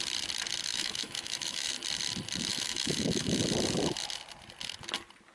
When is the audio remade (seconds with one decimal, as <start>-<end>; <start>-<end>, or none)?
0.7-1.7; 2.5-3.3